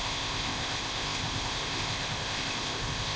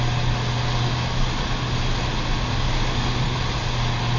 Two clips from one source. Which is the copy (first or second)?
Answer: first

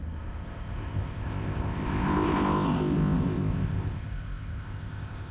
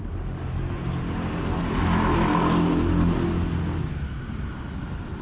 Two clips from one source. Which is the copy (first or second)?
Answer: first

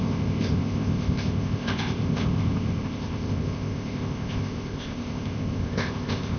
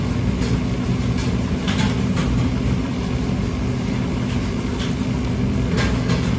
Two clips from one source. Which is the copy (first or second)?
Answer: first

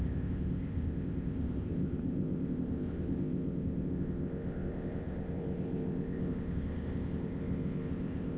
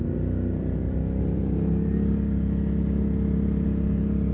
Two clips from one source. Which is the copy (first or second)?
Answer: first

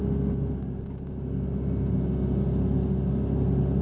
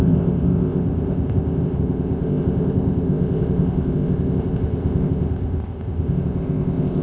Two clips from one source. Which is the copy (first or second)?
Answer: second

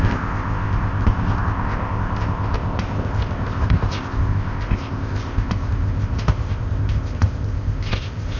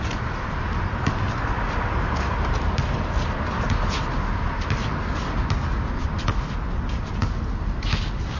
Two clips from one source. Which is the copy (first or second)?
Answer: first